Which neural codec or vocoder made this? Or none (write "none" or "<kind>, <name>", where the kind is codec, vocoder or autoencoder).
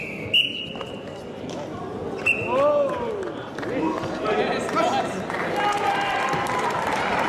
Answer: none